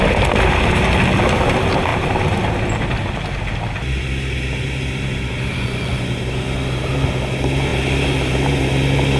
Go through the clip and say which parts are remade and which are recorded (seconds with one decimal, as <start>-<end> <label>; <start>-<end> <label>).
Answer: 0.0-5.5 recorded; 5.5-6.2 remade; 6.2-9.2 recorded